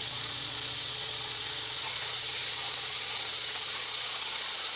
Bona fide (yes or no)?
no